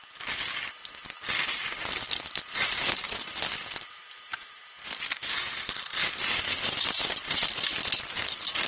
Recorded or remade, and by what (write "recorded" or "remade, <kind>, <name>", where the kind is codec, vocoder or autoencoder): recorded